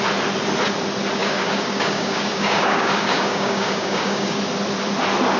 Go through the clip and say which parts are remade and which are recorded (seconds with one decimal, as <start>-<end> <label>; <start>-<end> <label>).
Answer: 0.0-1.2 recorded; 1.2-4.4 remade; 4.4-5.4 recorded